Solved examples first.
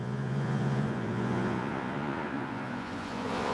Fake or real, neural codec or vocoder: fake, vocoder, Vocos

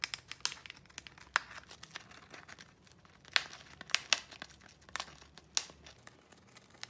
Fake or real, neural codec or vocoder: real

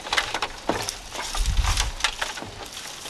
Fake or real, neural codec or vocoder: real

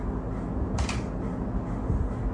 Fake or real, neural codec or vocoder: real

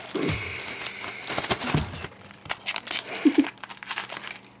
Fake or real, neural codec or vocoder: real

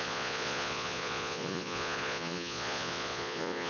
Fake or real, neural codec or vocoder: fake, vocoder, Vocos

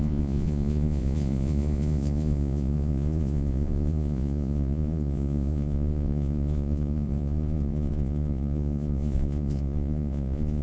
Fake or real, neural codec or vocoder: fake, vocoder, Vocos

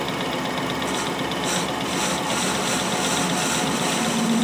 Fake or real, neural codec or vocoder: real